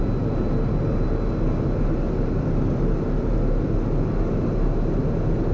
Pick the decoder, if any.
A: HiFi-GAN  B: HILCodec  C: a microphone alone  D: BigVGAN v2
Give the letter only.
C